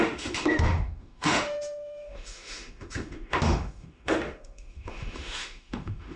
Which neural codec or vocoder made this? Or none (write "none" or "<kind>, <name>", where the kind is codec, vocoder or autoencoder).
autoencoder, DAC-VAE